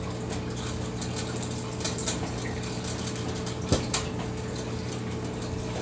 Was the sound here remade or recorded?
recorded